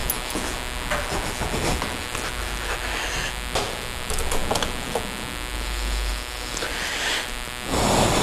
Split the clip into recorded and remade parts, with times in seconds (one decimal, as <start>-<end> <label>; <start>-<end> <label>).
0.0-8.2 recorded